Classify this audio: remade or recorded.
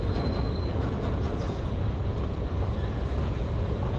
remade